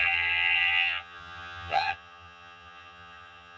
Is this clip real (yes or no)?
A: no